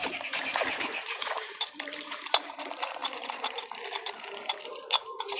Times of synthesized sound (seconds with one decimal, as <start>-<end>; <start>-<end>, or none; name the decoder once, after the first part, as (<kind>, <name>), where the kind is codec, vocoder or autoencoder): 0.0-5.4 (vocoder, BigVGAN v2)